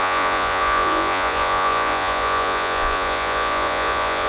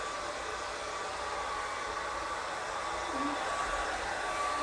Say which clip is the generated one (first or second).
first